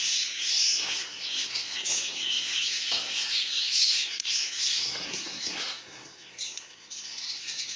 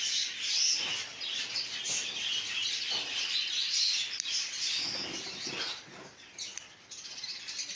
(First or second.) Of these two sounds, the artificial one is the first